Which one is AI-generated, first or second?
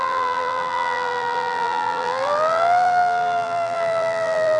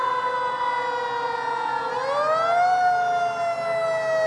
first